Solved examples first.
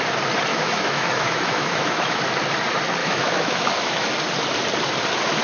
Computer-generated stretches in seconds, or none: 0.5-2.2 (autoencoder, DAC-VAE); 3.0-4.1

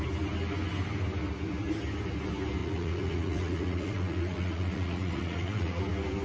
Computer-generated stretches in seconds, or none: 2.6-5.8 (vocoder, Vocos)

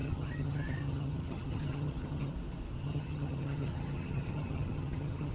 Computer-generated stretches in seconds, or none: 0.0-2.3 (vocoder, HiFi-GAN); 2.8-5.3

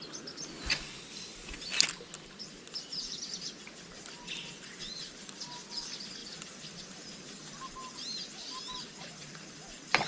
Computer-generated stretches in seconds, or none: none

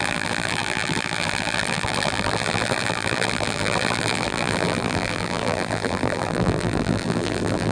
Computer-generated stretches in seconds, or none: 0.0-7.7 (vocoder, BigVGAN v2)

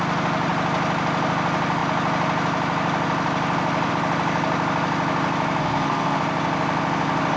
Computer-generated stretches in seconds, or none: 5.6-6.2 (codec, SNAC)